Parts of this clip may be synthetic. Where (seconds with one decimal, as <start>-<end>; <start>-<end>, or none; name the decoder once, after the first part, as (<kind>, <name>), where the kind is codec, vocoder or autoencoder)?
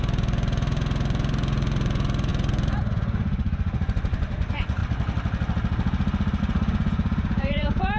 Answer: 0.0-4.8 (vocoder, Vocos); 6.4-8.0